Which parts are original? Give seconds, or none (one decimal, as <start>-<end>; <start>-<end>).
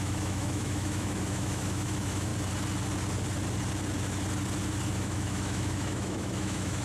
2.3-4.9